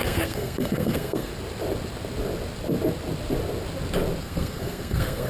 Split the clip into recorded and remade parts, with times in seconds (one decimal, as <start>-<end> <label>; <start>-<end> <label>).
0.0-1.3 remade; 1.3-4.2 recorded; 4.2-5.3 remade